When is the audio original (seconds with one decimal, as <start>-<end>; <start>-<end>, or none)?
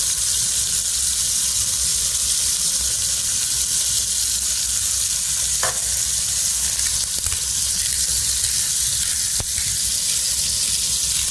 0.0-1.9; 3.0-11.3